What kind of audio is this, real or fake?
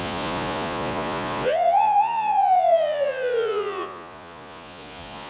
fake